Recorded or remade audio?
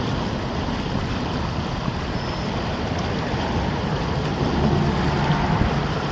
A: recorded